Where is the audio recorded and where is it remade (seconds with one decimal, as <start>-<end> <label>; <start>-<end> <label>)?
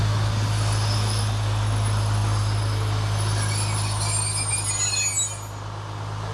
0.0-6.3 recorded